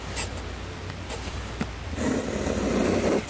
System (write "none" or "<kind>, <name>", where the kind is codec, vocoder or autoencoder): vocoder, BigVGAN v2